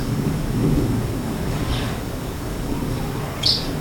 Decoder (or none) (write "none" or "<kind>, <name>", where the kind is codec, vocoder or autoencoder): codec, DAC